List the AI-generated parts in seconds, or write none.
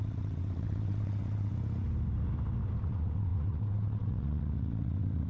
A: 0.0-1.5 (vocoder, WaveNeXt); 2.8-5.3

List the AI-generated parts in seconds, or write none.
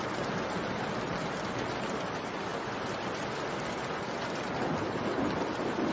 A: none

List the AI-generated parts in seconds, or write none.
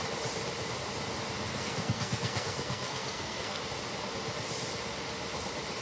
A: 1.5-3.6 (codec, SNAC)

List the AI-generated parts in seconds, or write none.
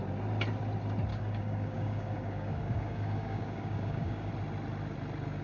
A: 1.1-4.3 (codec, DAC)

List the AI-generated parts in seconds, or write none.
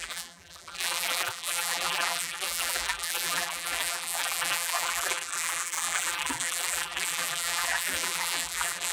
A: 0.0-8.9 (vocoder, BigVGAN v2)